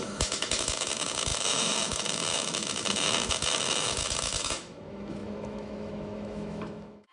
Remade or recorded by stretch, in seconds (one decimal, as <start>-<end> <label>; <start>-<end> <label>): 0.0-7.1 remade